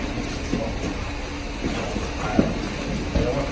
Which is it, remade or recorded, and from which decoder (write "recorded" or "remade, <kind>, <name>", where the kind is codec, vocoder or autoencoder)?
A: recorded